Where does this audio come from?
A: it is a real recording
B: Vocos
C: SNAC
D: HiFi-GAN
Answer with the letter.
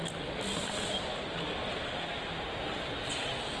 A